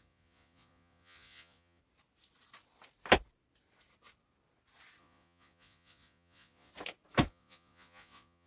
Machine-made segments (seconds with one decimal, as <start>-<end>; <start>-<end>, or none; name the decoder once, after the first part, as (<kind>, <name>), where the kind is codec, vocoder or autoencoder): 0.0-1.8 (vocoder, Vocos); 5.0-6.7; 7.3-8.5